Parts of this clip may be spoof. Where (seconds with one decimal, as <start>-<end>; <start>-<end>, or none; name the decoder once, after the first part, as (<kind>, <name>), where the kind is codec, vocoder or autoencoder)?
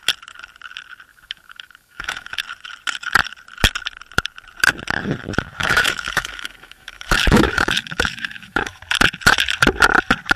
1.1-2.4 (autoencoder, DAC-VAE); 5.6-8.8